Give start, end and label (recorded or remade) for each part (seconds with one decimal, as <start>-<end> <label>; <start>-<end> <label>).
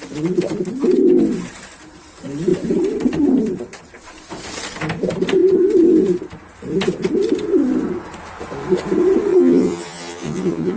0.0-9.3 recorded; 9.3-10.8 remade